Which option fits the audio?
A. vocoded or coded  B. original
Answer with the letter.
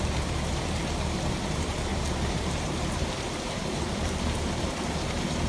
A